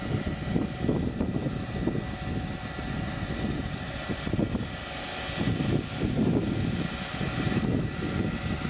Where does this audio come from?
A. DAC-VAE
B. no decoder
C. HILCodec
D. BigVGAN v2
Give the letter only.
B